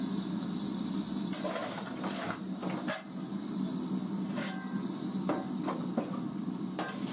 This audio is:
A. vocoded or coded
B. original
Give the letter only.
B